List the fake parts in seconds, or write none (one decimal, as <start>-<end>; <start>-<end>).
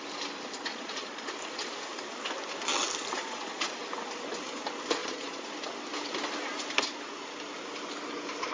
0.7-1.3; 3.1-3.7; 5.0-5.5